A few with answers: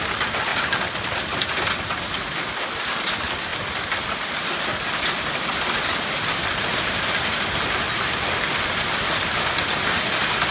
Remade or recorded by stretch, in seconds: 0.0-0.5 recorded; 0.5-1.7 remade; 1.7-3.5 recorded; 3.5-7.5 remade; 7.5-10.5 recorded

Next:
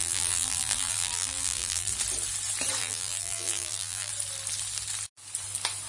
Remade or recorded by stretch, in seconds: 0.0-1.9 remade; 1.9-2.8 recorded; 2.8-4.1 remade; 4.1-5.9 recorded

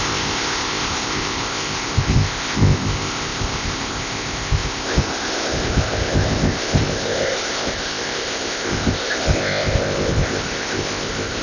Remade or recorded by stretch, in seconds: 0.0-11.4 remade